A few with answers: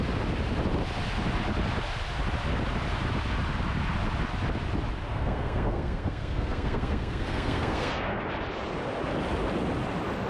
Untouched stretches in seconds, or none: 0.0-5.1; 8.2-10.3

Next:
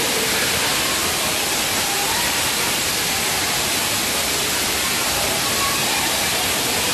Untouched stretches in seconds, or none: 0.0-6.9